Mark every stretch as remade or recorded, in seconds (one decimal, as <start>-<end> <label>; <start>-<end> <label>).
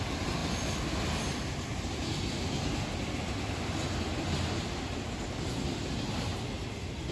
0.0-7.1 recorded